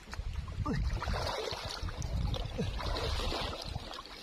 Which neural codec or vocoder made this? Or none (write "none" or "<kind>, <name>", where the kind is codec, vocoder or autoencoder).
none